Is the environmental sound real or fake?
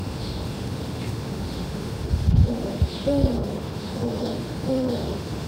fake